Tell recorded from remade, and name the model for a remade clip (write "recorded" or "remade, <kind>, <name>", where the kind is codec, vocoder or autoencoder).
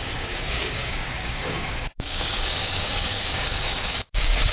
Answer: remade, codec, DAC